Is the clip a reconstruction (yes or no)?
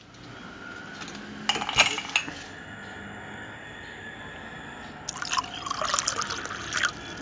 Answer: no